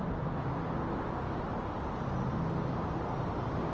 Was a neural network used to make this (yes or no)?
no